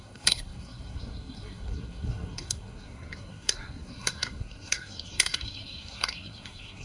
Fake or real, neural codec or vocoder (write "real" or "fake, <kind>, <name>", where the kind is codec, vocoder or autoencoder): fake, codec, SNAC